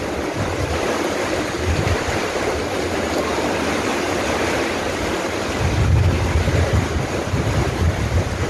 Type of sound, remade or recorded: recorded